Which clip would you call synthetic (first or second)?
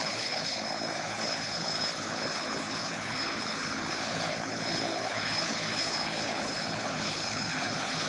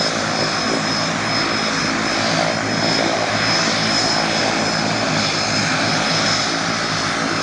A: first